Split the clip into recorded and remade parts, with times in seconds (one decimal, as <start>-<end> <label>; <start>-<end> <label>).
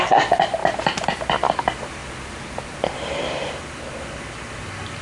0.0-2.0 recorded; 2.0-3.5 remade; 3.5-5.0 recorded